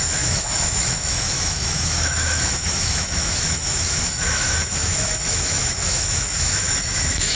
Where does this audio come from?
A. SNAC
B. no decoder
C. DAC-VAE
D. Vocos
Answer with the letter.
C